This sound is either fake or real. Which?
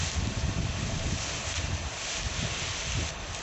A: real